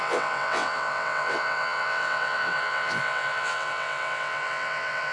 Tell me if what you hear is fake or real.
fake